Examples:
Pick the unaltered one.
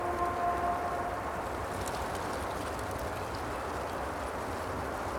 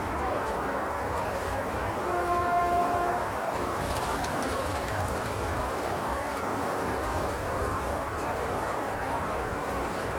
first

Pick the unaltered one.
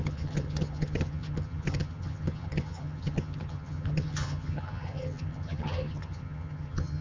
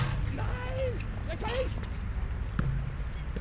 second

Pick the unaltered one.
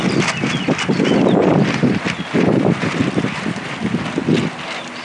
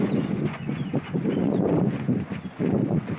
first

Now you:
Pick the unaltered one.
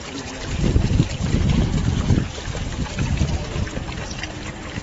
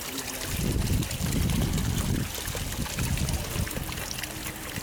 second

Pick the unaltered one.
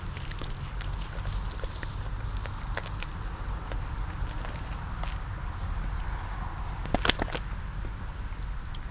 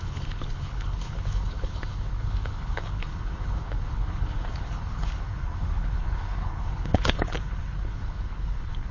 first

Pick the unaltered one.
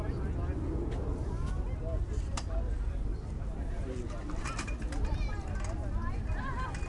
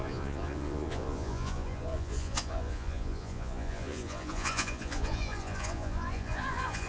first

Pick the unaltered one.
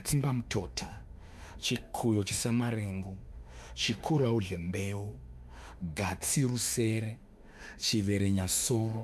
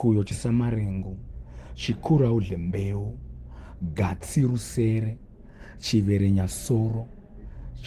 second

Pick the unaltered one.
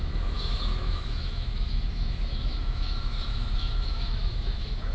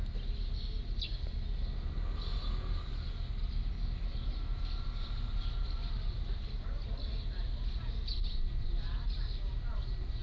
second